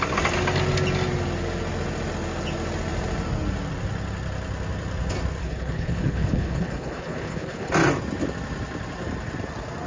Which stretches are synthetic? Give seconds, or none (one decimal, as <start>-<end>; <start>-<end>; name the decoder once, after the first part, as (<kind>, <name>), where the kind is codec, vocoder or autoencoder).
5.4-7.7 (codec, HILCodec)